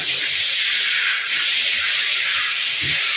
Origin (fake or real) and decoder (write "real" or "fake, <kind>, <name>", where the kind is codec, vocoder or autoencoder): fake, vocoder, BigVGAN v2